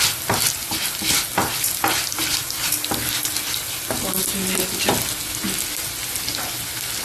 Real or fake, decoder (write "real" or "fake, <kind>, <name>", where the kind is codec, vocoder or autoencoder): real